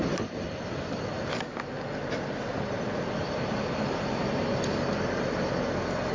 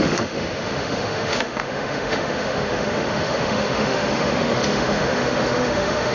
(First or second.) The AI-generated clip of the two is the second